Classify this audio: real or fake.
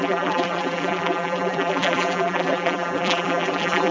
fake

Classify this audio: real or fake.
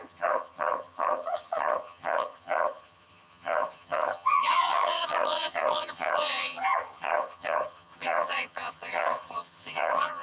fake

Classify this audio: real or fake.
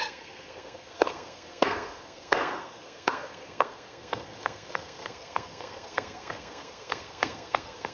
fake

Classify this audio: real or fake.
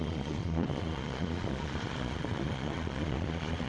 fake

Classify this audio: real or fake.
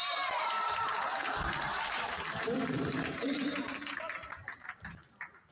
fake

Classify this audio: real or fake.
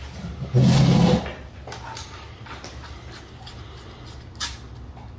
real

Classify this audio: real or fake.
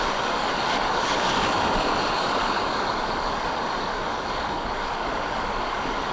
fake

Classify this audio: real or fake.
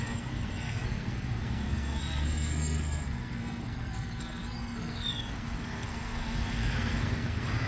fake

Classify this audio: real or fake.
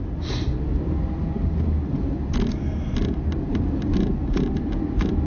real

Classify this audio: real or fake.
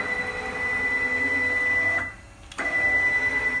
real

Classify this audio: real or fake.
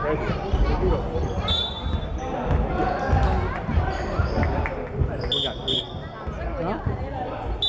real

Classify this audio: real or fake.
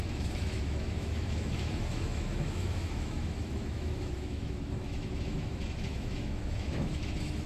fake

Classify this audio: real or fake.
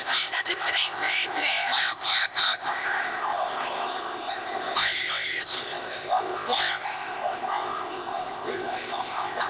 fake